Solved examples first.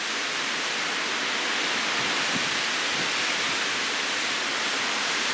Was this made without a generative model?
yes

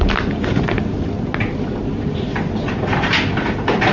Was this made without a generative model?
yes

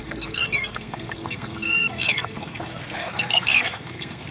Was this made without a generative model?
no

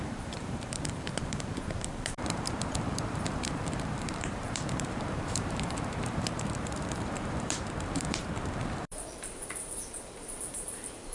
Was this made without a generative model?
no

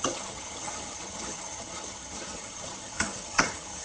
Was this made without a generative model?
no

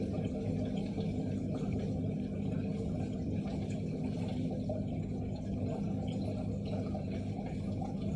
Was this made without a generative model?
yes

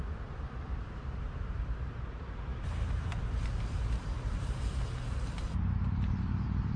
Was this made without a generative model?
no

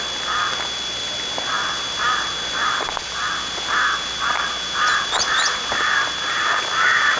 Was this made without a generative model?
yes